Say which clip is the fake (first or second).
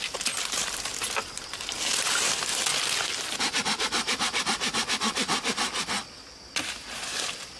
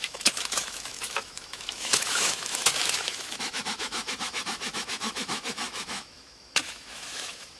second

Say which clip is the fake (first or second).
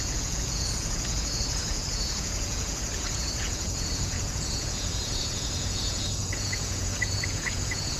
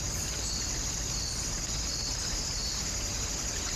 first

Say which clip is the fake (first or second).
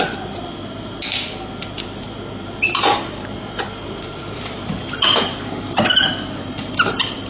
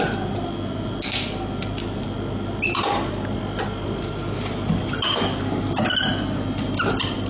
first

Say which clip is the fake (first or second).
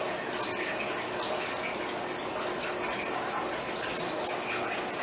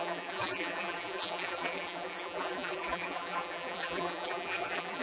second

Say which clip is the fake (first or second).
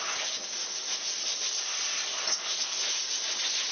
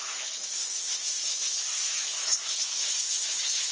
second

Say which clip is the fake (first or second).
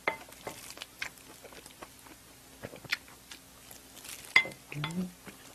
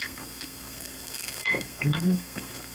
second